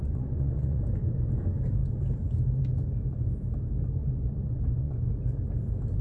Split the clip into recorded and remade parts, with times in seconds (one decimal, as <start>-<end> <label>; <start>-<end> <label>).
0.0-0.8 remade; 0.8-4.0 recorded; 4.0-5.1 remade; 5.1-6.0 recorded

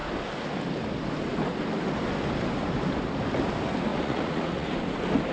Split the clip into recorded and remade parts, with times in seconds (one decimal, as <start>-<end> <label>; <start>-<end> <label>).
0.0-3.9 recorded; 3.9-4.7 remade; 4.7-5.3 recorded

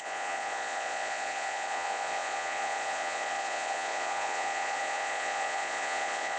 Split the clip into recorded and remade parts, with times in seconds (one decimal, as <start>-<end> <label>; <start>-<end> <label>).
0.0-6.4 remade

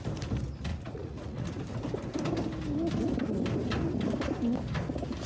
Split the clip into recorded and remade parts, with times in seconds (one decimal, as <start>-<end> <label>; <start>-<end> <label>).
0.0-0.7 recorded; 0.7-1.6 remade; 1.6-5.3 recorded

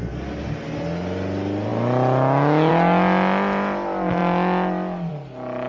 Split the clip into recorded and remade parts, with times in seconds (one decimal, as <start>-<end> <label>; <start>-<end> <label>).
0.0-5.7 recorded

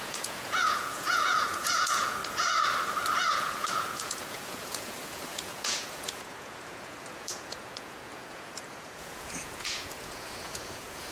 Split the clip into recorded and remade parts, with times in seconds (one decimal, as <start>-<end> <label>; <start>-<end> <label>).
0.0-2.2 remade; 2.2-3.3 recorded; 3.3-11.1 remade

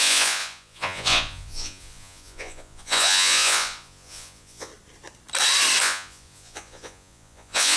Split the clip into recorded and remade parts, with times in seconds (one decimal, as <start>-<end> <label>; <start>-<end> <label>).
0.0-4.7 remade; 4.7-5.8 recorded; 5.8-7.8 remade

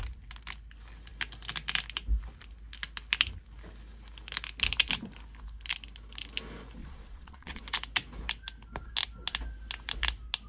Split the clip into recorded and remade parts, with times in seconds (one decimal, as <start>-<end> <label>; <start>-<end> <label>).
0.0-6.8 recorded; 6.8-7.6 remade; 7.6-10.5 recorded